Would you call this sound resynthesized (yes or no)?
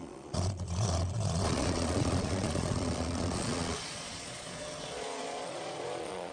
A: yes